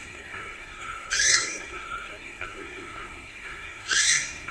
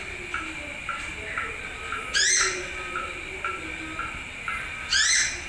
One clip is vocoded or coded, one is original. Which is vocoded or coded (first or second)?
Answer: first